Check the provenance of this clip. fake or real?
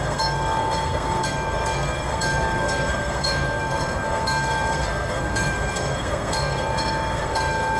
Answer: fake